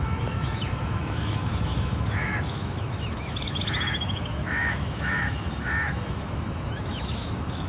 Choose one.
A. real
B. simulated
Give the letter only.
B